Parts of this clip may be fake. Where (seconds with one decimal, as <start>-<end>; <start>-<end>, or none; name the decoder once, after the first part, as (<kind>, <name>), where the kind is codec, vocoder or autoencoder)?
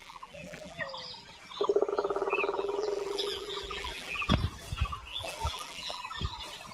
0.0-0.8 (vocoder, BigVGAN v2); 1.9-4.3; 5.1-6.0